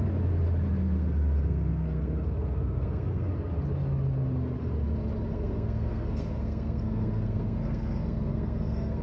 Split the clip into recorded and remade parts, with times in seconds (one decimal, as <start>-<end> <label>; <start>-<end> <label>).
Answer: 0.0-0.8 recorded; 0.8-3.3 remade; 3.3-5.3 recorded; 5.3-9.0 remade